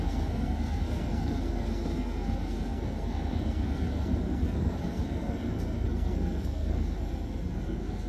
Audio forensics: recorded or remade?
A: remade